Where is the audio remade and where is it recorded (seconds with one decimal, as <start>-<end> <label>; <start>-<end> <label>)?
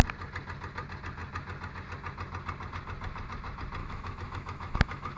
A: 0.0-3.8 recorded; 3.8-5.2 remade